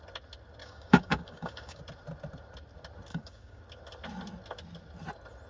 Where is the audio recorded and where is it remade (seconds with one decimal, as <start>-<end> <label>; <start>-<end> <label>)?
0.0-0.6 recorded; 0.6-1.8 remade; 1.8-3.1 recorded; 3.1-3.6 remade; 3.6-5.5 recorded